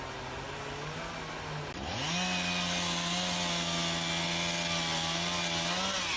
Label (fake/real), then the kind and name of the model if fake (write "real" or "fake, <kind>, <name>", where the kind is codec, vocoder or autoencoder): real